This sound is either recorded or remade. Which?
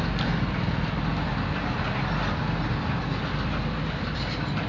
recorded